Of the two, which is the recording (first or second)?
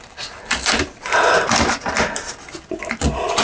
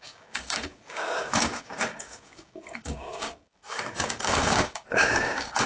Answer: first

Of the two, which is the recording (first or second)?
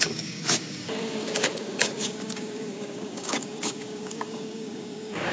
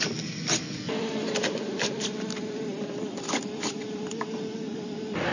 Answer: second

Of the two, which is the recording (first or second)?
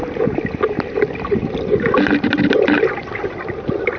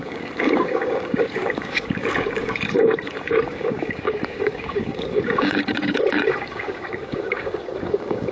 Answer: first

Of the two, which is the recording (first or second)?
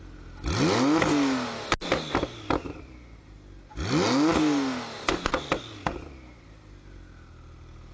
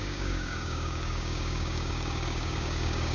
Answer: first